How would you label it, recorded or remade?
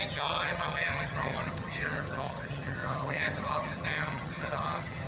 remade